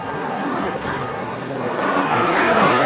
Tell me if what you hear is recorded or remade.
remade